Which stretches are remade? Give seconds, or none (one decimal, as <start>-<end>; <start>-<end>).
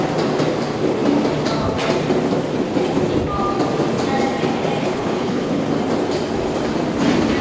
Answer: 4.8-5.6